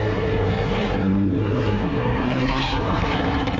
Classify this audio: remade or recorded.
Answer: remade